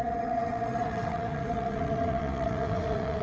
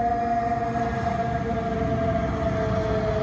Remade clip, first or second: first